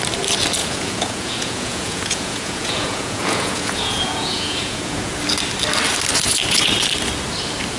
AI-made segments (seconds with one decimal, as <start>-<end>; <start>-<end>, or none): 0.6-5.2